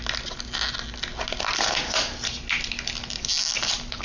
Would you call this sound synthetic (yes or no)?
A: no